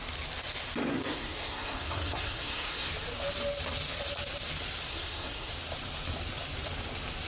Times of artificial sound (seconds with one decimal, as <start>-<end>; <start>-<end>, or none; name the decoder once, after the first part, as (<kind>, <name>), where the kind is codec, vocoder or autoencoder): 0.9-2.9 (codec, SNAC); 4.9-5.5